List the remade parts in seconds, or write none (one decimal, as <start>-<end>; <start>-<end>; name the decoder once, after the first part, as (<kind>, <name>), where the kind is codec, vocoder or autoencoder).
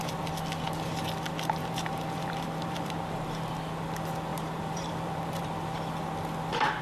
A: 1.6-3.6 (vocoder, BigVGAN v2); 4.3-5.4